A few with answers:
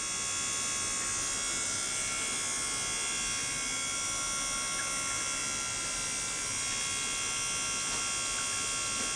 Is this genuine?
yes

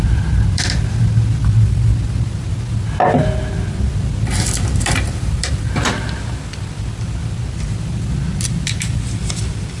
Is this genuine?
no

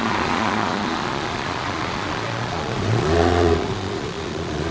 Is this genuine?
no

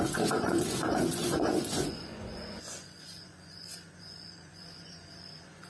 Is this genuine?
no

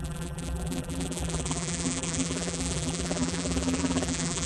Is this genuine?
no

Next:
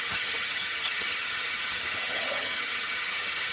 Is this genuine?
no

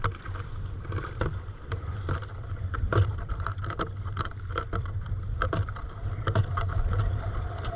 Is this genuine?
no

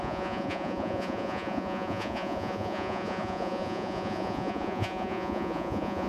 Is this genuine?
no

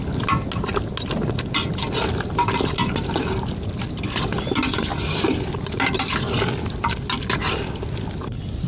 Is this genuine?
yes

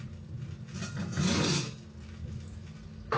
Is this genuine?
yes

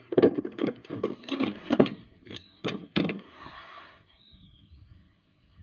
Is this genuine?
no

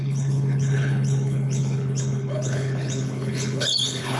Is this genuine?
no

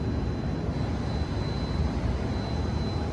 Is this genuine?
yes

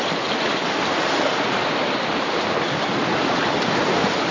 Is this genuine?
yes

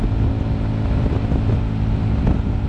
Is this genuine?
yes